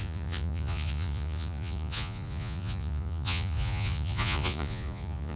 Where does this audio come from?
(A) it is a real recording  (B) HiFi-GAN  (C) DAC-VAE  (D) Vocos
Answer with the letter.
D